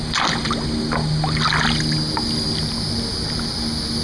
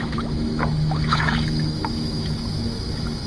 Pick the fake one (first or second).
second